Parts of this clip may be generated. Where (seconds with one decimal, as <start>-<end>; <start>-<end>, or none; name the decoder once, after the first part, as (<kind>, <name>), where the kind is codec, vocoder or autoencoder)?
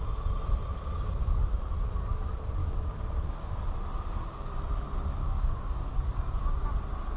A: 2.6-3.5 (codec, DAC); 5.2-6.7